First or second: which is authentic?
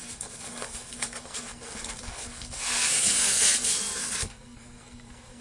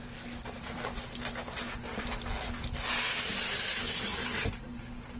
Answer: second